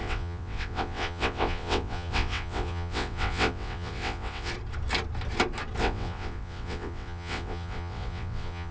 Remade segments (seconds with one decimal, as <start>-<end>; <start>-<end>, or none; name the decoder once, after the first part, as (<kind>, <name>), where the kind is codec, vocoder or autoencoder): 0.0-4.5 (vocoder, WaveNeXt); 5.8-8.7